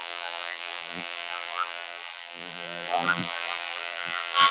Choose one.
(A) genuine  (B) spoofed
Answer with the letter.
B